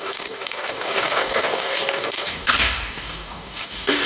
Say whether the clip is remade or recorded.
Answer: remade